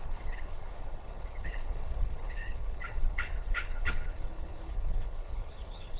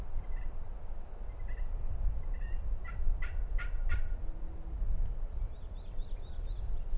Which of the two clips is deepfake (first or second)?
first